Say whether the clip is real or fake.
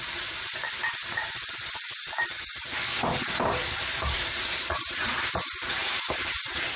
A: fake